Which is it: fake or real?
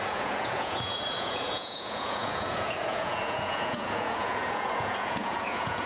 fake